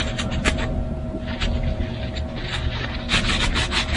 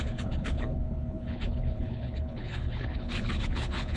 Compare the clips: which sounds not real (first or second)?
second